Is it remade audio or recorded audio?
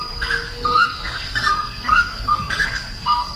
remade